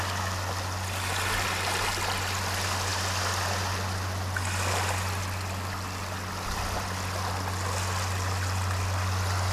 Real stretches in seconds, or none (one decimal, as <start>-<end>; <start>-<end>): 0.0-9.5